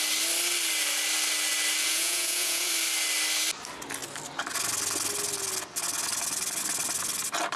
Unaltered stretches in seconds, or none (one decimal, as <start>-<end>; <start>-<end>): 0.0-1.8; 2.7-7.6